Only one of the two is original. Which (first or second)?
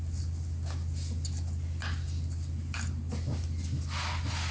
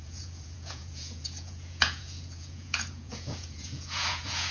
first